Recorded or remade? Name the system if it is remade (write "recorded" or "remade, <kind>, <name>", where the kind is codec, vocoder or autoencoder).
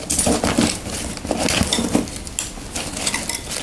recorded